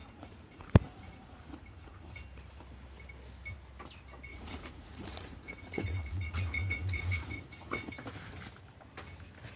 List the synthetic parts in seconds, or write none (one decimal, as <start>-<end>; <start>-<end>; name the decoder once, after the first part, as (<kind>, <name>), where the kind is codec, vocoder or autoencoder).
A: 0.0-2.1 (vocoder, Vocos); 4.3-7.9